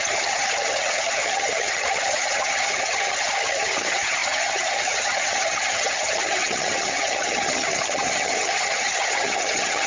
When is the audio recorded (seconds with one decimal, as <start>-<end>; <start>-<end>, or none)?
none